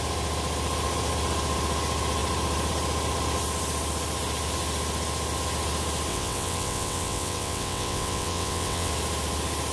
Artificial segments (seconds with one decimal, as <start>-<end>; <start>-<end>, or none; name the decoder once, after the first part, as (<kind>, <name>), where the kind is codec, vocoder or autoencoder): 6.1-8.9 (vocoder, WaveNeXt)